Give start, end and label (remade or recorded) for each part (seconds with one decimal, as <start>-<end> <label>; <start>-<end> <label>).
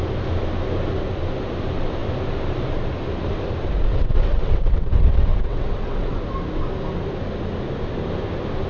0.0-3.9 recorded; 3.9-6.2 remade; 6.2-8.7 recorded